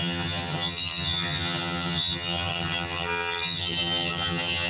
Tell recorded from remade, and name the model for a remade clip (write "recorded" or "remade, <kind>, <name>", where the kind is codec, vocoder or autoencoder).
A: remade, vocoder, HiFi-GAN